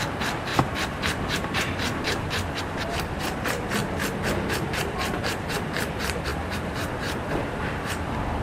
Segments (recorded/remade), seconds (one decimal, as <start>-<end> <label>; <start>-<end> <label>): 0.0-3.8 remade; 3.8-4.5 recorded; 4.5-8.4 remade